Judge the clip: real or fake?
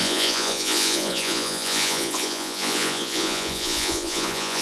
fake